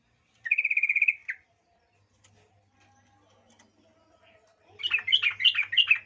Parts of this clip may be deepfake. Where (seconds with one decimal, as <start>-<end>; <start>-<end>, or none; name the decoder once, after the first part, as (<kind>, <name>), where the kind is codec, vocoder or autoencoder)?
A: none